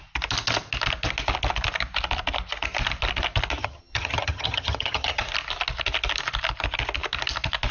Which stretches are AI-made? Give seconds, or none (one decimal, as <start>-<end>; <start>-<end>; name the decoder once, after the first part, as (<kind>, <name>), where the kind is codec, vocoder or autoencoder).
3.6-5.2 (vocoder, HiFi-GAN)